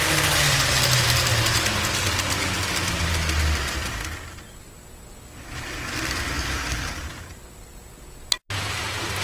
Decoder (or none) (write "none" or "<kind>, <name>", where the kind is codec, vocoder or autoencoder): none